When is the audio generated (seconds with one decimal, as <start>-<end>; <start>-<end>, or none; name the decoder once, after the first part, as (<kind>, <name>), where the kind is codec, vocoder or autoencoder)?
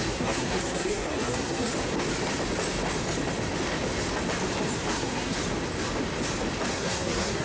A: 0.0-1.7 (codec, SNAC); 4.9-5.4; 6.7-7.4